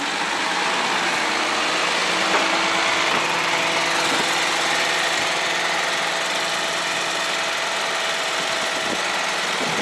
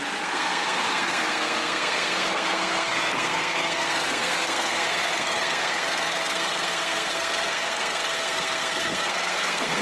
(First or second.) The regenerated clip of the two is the second